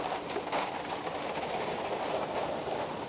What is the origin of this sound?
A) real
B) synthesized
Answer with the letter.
A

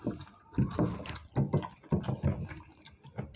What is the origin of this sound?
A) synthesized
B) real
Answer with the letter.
B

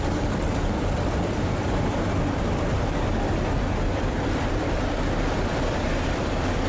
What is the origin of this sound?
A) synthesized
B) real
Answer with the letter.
A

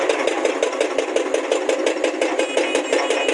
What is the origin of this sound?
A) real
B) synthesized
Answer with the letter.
A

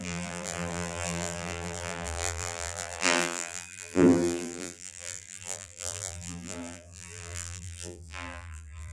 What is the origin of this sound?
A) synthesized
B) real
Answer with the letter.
A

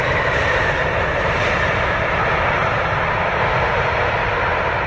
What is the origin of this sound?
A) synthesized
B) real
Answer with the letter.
A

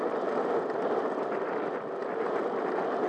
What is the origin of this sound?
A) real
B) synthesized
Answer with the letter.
A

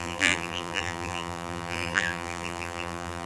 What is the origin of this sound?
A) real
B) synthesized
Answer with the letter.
B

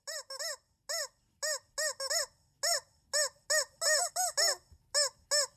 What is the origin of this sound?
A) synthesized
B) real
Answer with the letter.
B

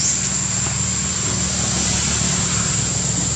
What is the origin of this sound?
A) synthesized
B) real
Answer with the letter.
B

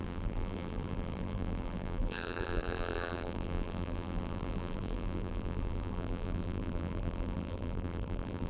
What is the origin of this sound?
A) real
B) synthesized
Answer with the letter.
B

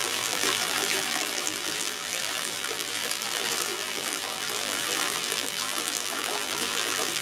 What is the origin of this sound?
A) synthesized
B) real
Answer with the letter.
A